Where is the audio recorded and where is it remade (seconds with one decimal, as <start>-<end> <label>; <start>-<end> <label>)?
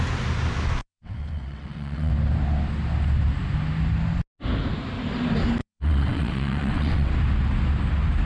0.0-0.8 recorded; 0.8-2.1 remade; 2.1-5.6 recorded; 5.6-7.1 remade; 7.1-8.3 recorded